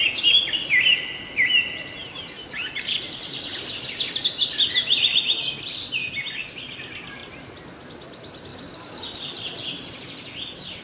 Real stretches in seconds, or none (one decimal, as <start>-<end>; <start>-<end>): 0.0-2.0; 3.6-10.8